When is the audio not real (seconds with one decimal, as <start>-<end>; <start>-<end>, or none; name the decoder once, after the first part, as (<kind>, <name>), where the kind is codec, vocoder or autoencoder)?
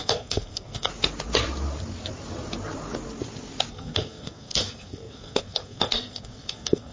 0.0-0.9 (codec, SNAC); 3.7-6.9